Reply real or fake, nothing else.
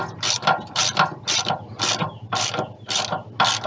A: real